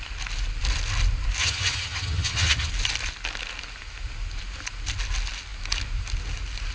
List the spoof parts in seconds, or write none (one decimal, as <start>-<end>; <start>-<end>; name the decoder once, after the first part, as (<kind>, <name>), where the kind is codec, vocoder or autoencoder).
1.4-2.7 (vocoder, HiFi-GAN)